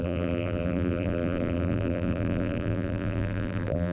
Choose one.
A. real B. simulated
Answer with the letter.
B